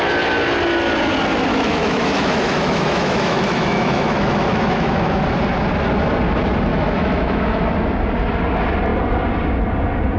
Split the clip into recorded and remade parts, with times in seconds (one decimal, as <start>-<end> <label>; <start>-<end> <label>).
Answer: 0.0-1.5 recorded; 1.5-5.2 remade; 5.2-6.7 recorded; 6.7-7.6 remade; 7.6-10.2 recorded